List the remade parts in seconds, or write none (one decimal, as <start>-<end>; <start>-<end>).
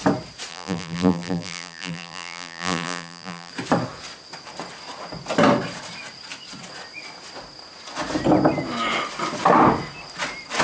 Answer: 0.5-3.5